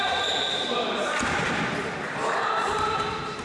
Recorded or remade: remade